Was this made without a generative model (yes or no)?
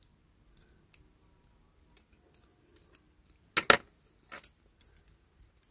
yes